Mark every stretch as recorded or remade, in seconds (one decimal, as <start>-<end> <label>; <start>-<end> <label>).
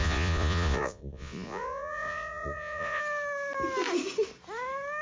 0.0-3.0 remade; 3.0-5.0 recorded